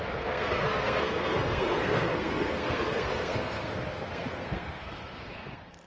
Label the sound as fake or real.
fake